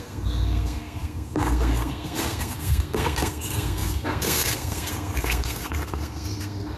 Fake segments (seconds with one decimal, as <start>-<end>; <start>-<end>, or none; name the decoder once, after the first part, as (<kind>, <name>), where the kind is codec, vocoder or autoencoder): 0.0-6.8 (codec, SNAC)